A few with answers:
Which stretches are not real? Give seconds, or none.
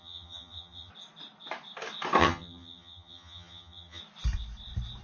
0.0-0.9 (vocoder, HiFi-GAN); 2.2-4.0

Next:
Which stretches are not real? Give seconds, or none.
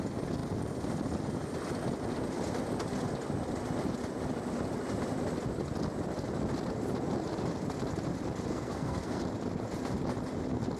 8.5-9.2 (codec, SNAC)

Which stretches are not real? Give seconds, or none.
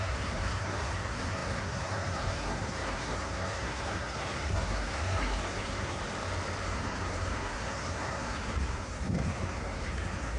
0.0-6.0 (codec, SNAC); 6.6-10.4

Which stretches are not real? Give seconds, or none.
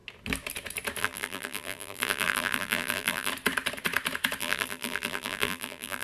1.0-3.3 (vocoder, BigVGAN v2); 4.4-6.0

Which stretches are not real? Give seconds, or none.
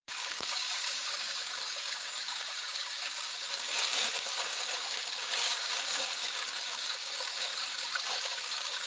0.0-7.5 (codec, DAC); 8.2-8.9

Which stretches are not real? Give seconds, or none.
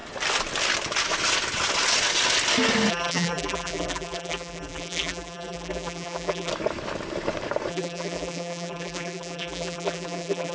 2.9-6.5 (vocoder, BigVGAN v2); 7.7-10.5